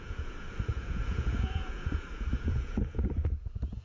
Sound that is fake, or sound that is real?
fake